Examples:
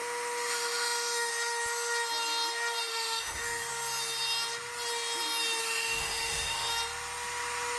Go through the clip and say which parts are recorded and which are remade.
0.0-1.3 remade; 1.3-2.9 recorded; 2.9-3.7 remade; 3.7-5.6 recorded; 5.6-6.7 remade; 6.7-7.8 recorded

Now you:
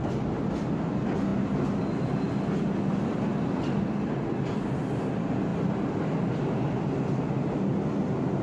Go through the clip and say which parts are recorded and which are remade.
0.0-8.4 recorded

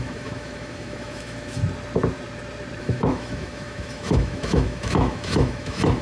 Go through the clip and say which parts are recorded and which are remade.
0.0-1.6 remade; 1.6-2.8 recorded; 2.8-6.0 remade

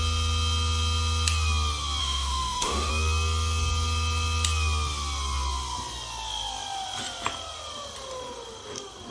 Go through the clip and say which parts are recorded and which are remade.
0.0-2.0 recorded; 2.0-2.9 remade; 2.9-9.1 recorded